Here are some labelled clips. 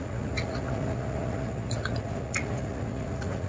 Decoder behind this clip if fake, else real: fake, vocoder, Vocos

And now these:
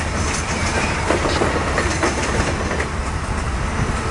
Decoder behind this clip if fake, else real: real